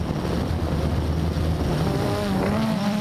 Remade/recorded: recorded